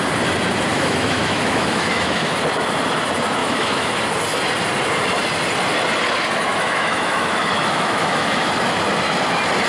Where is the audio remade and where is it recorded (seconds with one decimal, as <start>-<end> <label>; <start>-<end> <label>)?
0.0-0.7 recorded; 0.7-2.3 remade; 2.3-3.4 recorded; 3.4-4.0 remade; 4.0-6.5 recorded; 6.5-8.5 remade; 8.5-9.7 recorded